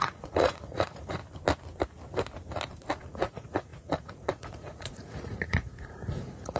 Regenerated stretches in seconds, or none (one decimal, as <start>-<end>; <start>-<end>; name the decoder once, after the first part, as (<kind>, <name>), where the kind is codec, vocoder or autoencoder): 0.0-1.2 (vocoder, Vocos); 3.0-6.6